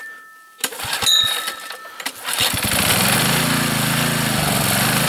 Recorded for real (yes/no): yes